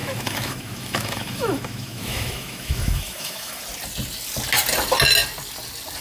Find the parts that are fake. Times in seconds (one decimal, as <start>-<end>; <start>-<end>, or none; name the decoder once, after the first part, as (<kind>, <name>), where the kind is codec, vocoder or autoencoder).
0.0-3.6 (autoencoder, DAC-VAE)